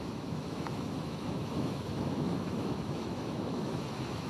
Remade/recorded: remade